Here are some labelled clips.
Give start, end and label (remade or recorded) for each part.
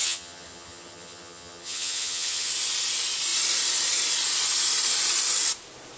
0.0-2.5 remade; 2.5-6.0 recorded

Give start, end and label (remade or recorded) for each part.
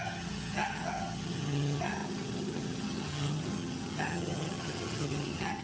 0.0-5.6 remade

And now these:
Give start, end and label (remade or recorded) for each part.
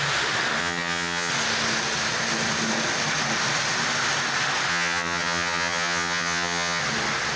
0.0-0.6 recorded; 0.6-1.3 remade; 1.3-4.7 recorded; 4.7-6.8 remade; 6.8-7.4 recorded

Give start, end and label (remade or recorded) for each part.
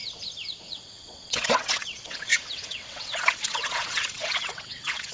0.0-0.7 recorded; 0.7-5.1 remade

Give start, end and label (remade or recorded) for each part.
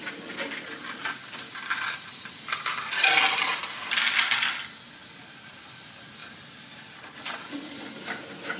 0.0-6.2 recorded; 6.2-8.0 remade; 8.0-8.6 recorded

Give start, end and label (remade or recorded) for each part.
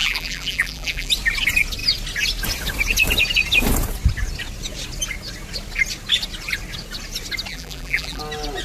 0.0-1.1 remade; 1.1-7.5 recorded; 7.5-8.2 remade; 8.2-8.6 recorded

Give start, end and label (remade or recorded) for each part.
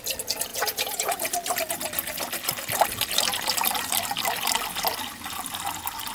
0.0-0.5 recorded; 0.5-1.2 remade; 1.2-6.1 recorded